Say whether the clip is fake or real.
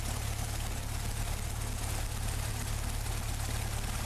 real